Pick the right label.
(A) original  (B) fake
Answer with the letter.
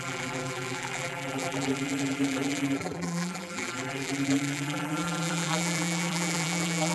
B